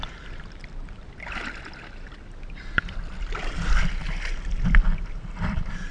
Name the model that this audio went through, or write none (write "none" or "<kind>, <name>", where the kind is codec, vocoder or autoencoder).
none